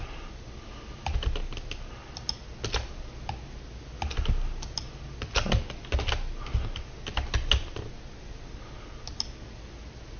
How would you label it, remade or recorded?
recorded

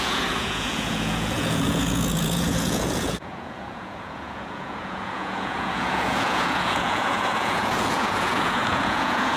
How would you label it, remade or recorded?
remade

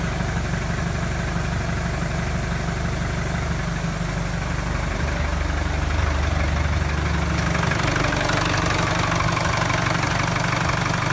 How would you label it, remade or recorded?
recorded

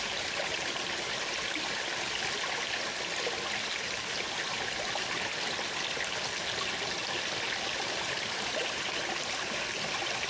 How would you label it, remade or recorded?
recorded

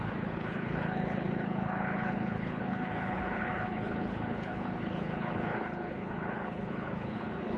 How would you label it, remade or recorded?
remade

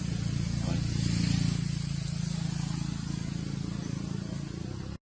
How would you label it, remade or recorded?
recorded